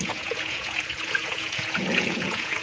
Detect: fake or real fake